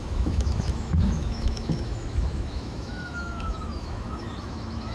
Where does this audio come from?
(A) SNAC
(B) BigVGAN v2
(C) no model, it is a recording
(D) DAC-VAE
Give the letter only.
D